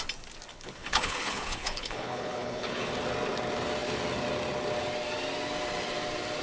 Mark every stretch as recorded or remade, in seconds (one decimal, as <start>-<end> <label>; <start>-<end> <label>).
0.0-0.5 recorded; 0.5-2.9 remade; 2.9-6.4 recorded